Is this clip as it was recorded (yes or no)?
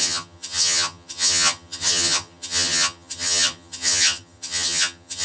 no